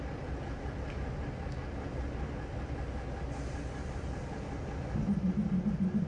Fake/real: real